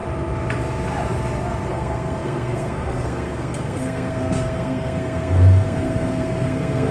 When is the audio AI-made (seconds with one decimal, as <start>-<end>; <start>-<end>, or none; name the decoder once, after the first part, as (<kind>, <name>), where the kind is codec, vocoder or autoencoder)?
1.7-6.9 (codec, SNAC)